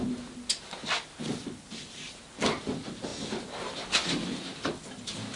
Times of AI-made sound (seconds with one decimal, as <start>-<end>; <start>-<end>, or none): none